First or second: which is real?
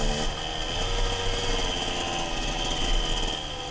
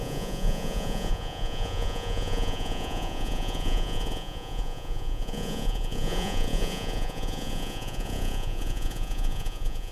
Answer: first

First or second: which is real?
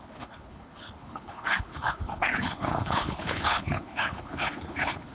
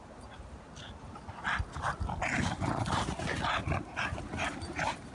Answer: second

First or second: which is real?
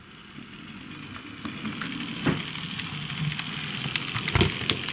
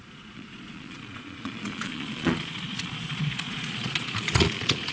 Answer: first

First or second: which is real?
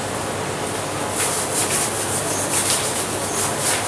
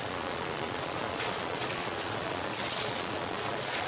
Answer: first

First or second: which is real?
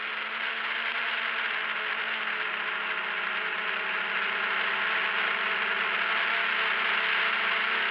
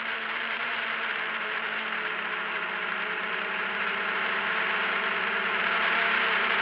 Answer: first